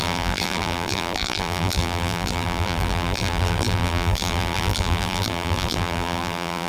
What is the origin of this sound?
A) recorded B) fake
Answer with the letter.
B